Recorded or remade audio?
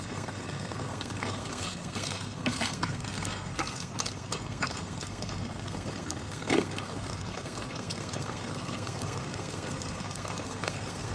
remade